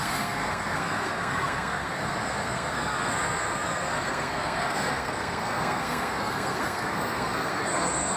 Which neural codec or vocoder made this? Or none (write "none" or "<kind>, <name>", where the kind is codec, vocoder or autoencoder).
codec, SNAC